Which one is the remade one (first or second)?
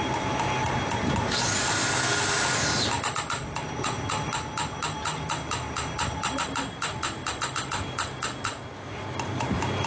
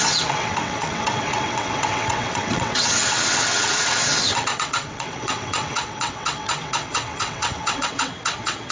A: second